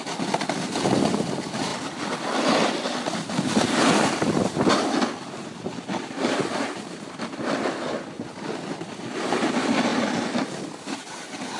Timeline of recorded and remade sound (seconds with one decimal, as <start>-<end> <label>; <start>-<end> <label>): 0.0-1.7 recorded; 1.7-4.7 remade; 4.7-9.9 recorded; 9.9-11.1 remade; 11.1-11.6 recorded